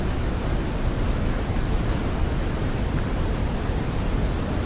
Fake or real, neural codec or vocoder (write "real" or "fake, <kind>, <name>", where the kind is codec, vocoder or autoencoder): real